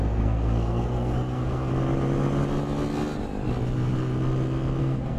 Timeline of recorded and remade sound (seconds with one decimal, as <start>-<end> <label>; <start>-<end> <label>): 0.0-1.7 remade; 1.7-4.8 recorded; 4.8-5.2 remade